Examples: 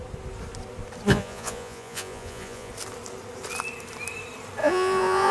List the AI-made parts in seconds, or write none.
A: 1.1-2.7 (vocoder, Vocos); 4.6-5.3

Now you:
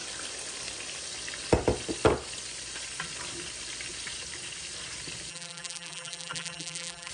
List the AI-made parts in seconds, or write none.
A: 5.3-7.1 (vocoder, BigVGAN v2)

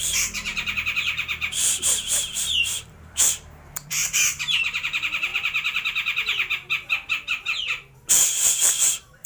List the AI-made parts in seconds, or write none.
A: 0.0-5.3 (vocoder, BigVGAN v2); 8.1-9.3

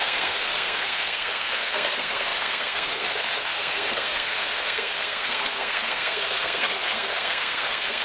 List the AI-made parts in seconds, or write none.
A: 0.0-8.0 (codec, SNAC)